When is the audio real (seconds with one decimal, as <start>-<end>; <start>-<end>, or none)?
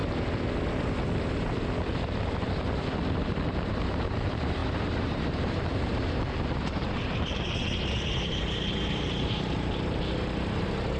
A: 0.0-3.7